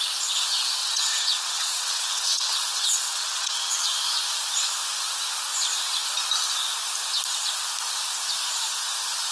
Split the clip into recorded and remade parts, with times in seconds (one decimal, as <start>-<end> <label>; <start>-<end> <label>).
0.0-0.8 recorded; 0.8-3.8 remade; 3.8-9.3 recorded